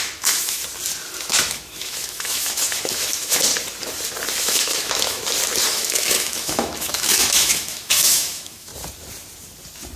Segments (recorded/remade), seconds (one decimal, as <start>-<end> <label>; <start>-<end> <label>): 0.0-0.6 remade; 0.6-1.3 recorded; 1.3-3.5 remade; 3.5-4.4 recorded; 4.4-5.2 remade; 5.2-5.7 recorded; 5.7-8.7 remade; 8.7-10.0 recorded